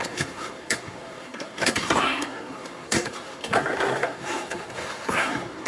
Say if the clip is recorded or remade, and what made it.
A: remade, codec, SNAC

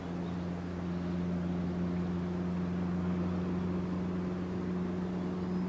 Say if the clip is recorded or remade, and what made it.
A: recorded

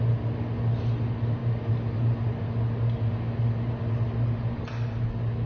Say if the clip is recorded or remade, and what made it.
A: recorded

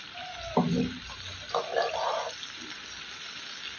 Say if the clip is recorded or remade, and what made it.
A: recorded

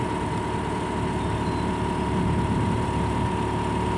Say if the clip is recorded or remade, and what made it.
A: recorded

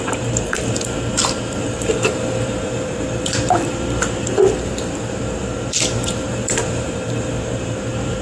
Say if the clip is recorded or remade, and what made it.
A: remade, vocoder, BigVGAN v2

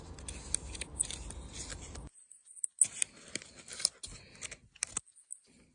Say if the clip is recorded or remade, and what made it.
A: recorded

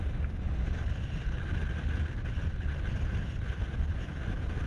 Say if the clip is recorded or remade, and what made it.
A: recorded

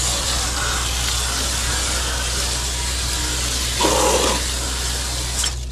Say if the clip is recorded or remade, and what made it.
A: recorded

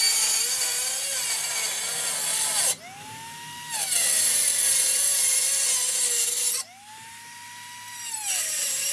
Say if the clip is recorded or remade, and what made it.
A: recorded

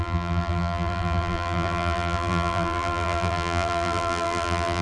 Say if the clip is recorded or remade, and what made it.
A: remade, vocoder, BigVGAN v2